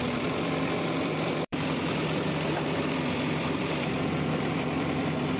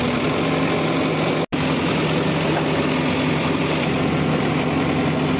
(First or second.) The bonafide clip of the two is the second